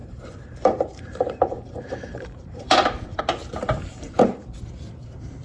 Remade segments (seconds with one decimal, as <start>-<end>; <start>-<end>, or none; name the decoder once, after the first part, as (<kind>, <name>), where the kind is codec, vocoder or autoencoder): 0.0-3.2 (vocoder, BigVGAN v2); 3.6-4.9